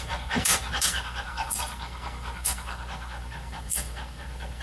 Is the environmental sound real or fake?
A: fake